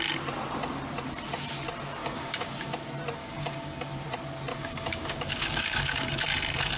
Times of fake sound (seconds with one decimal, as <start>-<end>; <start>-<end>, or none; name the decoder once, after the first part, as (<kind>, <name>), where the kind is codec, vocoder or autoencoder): 2.0-2.7 (codec, DAC); 3.2-3.9; 4.5-6.1